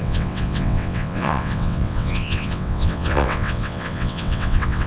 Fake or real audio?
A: fake